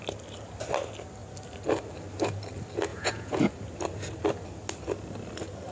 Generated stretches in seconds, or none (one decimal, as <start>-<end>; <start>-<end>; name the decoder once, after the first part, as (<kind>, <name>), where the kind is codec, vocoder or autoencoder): 2.9-3.5 (vocoder, Vocos)